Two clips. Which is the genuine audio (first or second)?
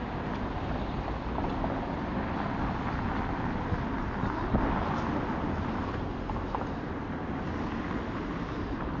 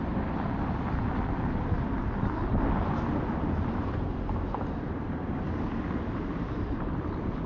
first